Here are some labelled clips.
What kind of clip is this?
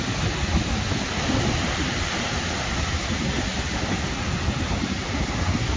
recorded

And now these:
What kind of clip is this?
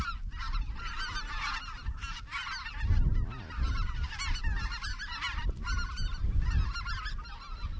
recorded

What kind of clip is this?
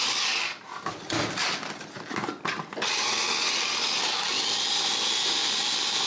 recorded